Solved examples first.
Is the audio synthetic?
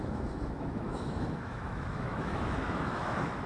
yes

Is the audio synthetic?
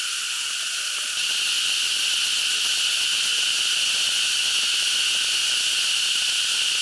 no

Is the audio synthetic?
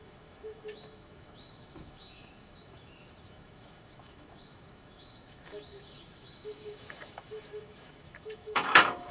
yes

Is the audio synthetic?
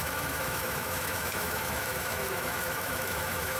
yes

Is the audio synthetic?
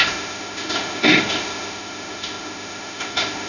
yes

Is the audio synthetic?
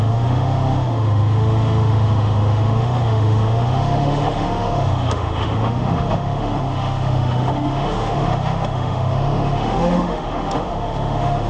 yes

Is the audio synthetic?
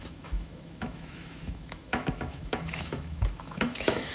yes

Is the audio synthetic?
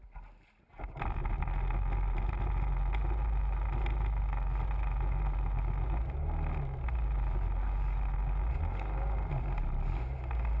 no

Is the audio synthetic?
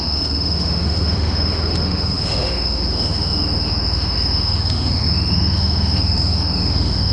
yes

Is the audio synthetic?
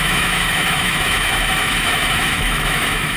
yes